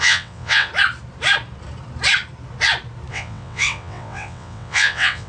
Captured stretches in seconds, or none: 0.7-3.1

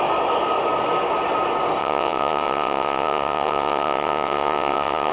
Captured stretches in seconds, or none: 0.0-1.8

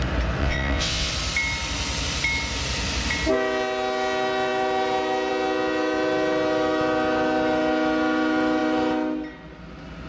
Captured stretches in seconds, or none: 0.0-0.4; 1.1-10.1

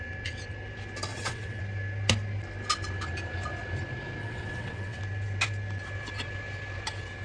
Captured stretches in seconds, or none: 0.0-1.1; 1.6-4.2; 5.0-7.2